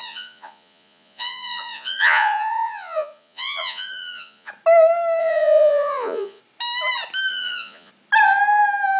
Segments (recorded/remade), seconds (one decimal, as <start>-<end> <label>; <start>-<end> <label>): 0.0-4.5 remade; 4.5-5.2 recorded; 5.2-6.4 remade; 6.4-7.3 recorded; 7.3-7.9 remade; 7.9-9.0 recorded